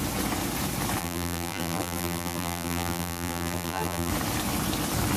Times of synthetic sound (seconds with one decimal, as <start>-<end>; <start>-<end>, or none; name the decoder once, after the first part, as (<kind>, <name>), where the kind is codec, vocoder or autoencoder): 1.0-4.1 (vocoder, BigVGAN v2)

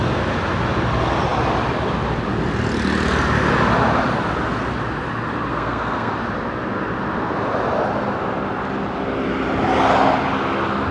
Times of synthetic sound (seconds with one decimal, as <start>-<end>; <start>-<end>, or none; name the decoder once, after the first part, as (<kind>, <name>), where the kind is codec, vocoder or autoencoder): 5.5-6.1 (codec, SNAC)

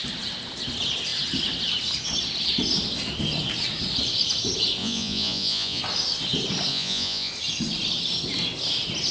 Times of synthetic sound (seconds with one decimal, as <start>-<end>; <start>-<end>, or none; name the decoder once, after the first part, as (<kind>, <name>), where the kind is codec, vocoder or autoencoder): 4.8-5.8 (vocoder, Vocos); 6.7-7.3

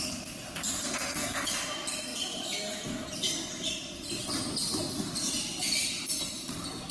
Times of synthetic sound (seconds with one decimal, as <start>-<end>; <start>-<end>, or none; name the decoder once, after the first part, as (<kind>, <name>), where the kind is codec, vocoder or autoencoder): 0.8-1.5 (codec, SNAC)

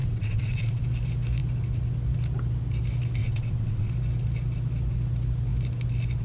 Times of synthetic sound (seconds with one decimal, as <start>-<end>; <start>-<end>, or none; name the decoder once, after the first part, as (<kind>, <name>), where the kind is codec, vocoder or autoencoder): 0.0-0.8 (vocoder, WaveNeXt); 3.2-3.9